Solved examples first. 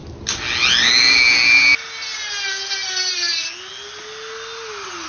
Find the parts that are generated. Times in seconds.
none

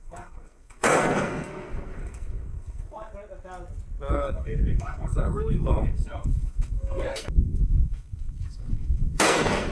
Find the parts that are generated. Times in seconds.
0.0-3.1 (codec, SNAC); 4.1-9.7

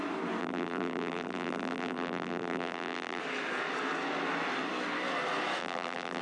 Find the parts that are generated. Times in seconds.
0.4-3.2 (vocoder, BigVGAN v2); 5.6-6.2

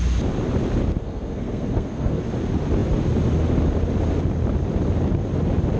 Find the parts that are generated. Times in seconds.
1.0-2.2 (codec, SNAC)

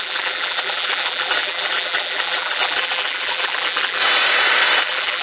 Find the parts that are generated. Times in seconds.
0.0-4.0 (vocoder, BigVGAN v2); 4.8-5.2

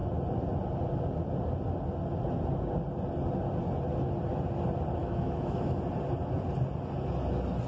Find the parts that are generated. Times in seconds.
5.0-5.8 (autoencoder, DAC-VAE)